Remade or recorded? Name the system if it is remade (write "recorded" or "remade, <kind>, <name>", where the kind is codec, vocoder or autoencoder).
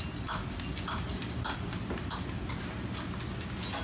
recorded